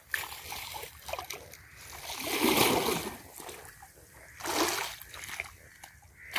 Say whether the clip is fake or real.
real